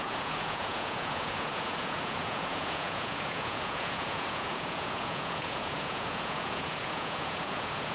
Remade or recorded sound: remade